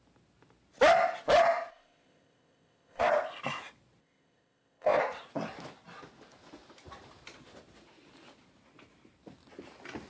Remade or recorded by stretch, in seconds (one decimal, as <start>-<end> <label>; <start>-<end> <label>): 0.0-1.7 recorded; 1.7-3.1 remade; 3.1-4.0 recorded; 4.0-5.0 remade; 5.0-10.1 recorded